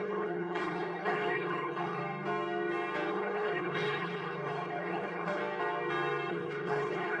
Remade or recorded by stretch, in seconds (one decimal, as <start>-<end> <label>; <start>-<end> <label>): 0.0-2.0 remade; 2.0-3.1 recorded; 3.1-5.4 remade; 5.4-6.3 recorded; 6.3-7.2 remade